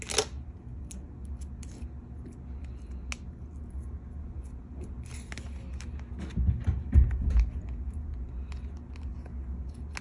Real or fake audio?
real